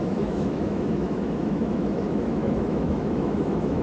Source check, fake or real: fake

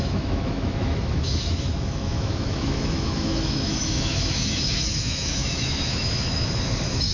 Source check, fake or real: fake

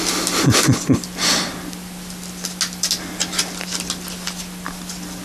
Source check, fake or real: real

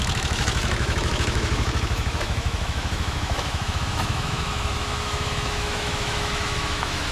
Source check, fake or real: fake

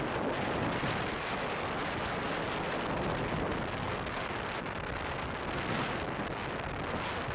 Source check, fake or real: real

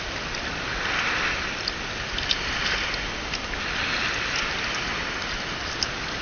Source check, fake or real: real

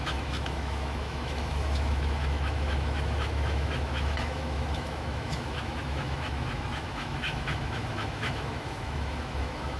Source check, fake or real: fake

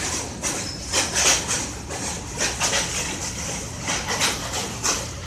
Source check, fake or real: real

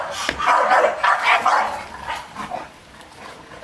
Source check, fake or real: real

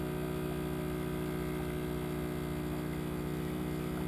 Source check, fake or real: real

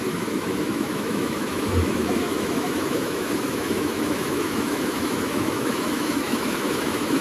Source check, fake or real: fake